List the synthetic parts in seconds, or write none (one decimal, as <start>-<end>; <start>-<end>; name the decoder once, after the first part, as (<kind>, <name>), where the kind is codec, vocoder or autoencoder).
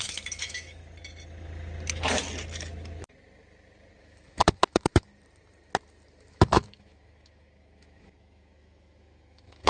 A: 0.0-0.8 (autoencoder, DAC-VAE); 4.0-5.1; 6.3-9.7